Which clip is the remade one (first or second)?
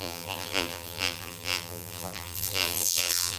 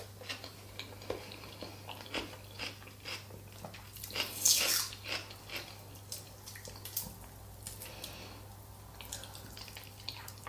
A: first